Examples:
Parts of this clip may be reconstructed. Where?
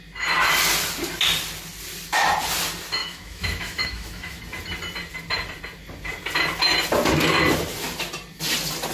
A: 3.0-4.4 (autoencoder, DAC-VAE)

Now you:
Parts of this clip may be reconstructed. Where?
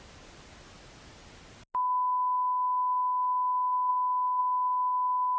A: none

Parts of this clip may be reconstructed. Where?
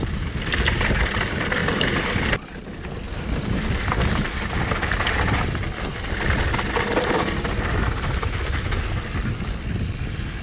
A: none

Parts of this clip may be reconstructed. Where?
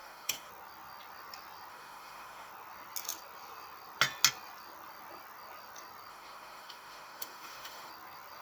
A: 0.0-0.5 (autoencoder, DAC-VAE); 1.7-2.5; 6.1-7.9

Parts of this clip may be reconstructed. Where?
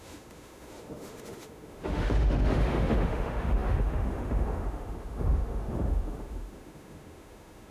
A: 0.0-7.7 (autoencoder, DAC-VAE)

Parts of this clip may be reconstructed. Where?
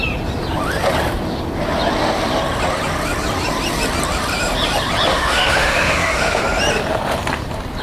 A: 5.1-6.4 (autoencoder, DAC-VAE)